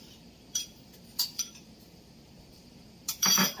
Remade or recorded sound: remade